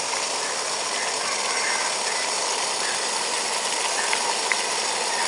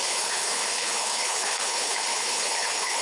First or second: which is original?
first